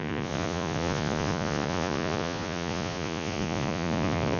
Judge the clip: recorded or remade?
remade